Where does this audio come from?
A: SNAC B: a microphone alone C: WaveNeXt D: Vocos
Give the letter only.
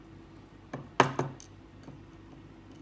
B